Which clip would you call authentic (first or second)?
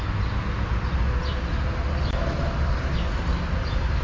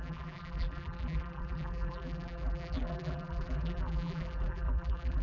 first